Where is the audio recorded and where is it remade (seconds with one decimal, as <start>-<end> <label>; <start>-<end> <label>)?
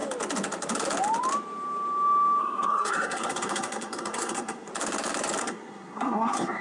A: 0.0-2.4 recorded; 2.4-4.7 remade; 4.7-5.4 recorded; 5.4-6.6 remade